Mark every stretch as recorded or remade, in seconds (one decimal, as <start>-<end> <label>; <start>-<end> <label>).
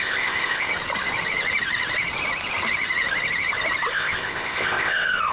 0.0-0.7 remade; 0.7-3.9 recorded; 3.9-5.3 remade